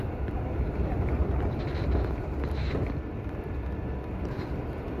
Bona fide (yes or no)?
no